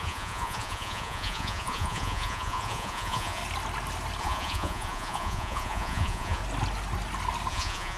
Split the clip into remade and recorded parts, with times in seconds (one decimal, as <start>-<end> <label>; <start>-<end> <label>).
0.0-3.4 remade; 3.4-4.2 recorded; 4.2-6.4 remade; 6.4-7.5 recorded; 7.5-8.0 remade